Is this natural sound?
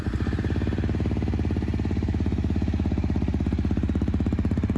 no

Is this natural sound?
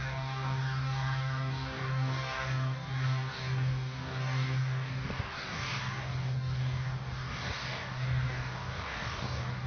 no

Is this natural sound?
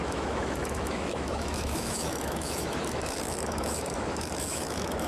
no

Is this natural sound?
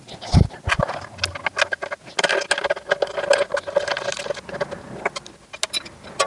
yes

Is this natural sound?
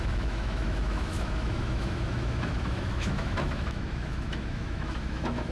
no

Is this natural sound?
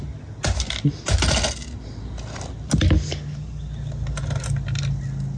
yes